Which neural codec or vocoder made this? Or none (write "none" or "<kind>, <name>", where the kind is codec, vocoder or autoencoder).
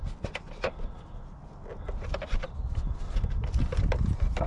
none